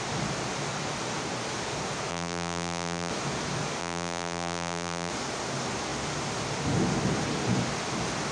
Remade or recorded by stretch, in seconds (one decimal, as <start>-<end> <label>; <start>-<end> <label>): 0.0-2.1 recorded; 2.1-3.1 remade; 3.1-3.8 recorded; 3.8-5.1 remade; 5.1-8.3 recorded